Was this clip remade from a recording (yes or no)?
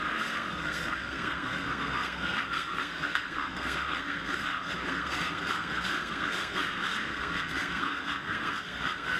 yes